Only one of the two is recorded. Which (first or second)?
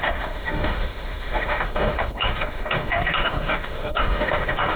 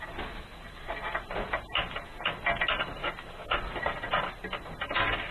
second